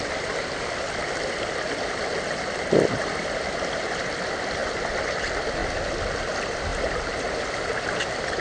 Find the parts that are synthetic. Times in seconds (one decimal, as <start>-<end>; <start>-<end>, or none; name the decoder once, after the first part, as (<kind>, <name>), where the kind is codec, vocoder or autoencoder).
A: 0.0-4.6 (vocoder, BigVGAN v2); 5.1-5.6; 6.2-8.4